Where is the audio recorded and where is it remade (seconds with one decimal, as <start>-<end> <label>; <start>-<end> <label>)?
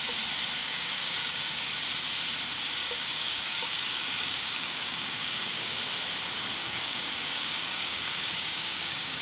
0.0-0.6 recorded; 0.6-1.6 remade; 1.6-2.8 recorded; 2.8-5.8 remade; 5.8-6.6 recorded; 6.6-9.2 remade